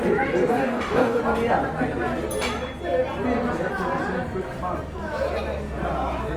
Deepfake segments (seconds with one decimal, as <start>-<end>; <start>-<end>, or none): 0.5-1.2